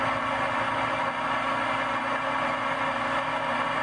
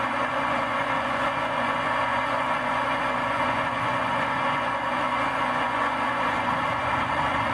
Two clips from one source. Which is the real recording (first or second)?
first